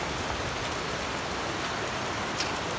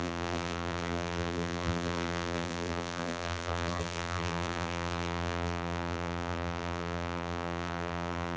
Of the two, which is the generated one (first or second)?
second